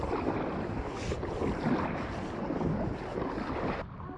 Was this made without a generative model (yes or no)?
yes